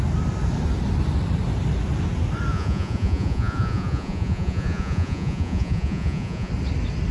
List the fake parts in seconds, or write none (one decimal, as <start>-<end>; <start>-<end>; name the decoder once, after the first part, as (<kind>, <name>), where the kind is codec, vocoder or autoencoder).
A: 2.5-6.5 (vocoder, Vocos)